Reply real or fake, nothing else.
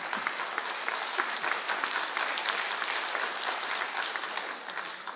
real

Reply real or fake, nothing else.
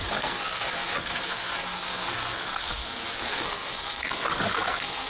fake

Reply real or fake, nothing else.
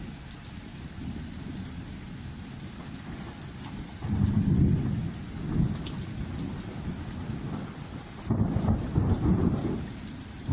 real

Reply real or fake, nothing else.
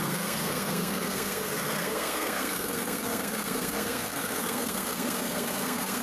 fake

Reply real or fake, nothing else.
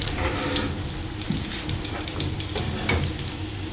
real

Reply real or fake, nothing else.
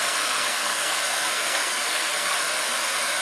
fake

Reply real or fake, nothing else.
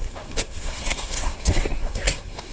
fake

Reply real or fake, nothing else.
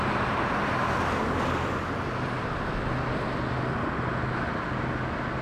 real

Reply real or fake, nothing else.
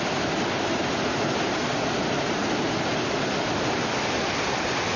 real